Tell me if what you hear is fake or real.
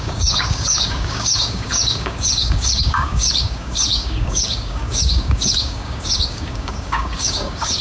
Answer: fake